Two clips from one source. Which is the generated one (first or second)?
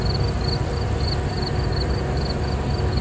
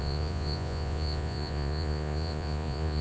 second